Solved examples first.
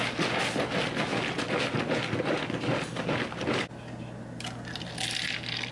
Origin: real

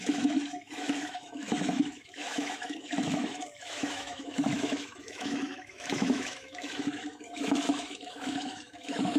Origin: fake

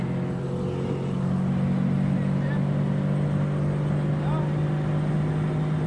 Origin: real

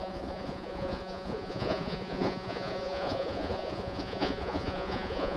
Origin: fake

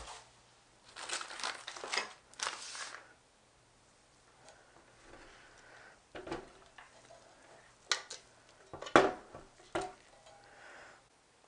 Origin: real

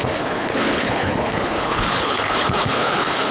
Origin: fake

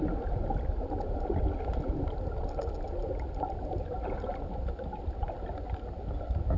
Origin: real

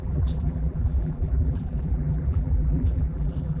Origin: fake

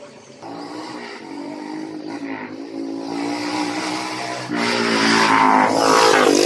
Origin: real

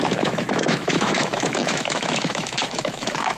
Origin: fake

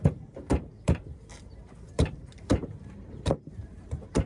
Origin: fake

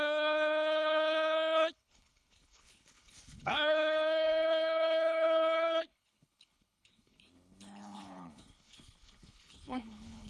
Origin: fake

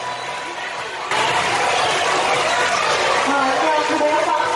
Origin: real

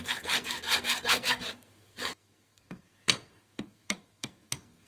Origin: fake